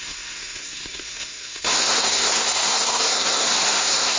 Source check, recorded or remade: remade